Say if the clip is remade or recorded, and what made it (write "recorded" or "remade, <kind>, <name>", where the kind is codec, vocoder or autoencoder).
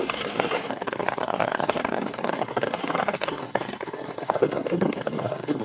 remade, codec, SNAC